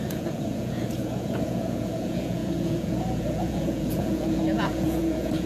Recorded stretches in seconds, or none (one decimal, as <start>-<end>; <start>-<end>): none

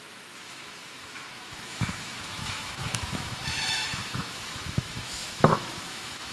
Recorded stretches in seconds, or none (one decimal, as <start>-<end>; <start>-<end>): none

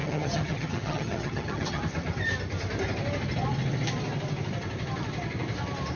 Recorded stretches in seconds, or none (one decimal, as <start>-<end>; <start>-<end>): 1.8-6.0